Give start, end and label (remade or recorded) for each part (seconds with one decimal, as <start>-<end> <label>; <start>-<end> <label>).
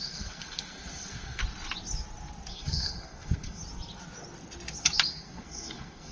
0.0-1.4 remade; 1.4-2.5 recorded; 2.5-3.6 remade; 3.6-5.2 recorded; 5.2-6.1 remade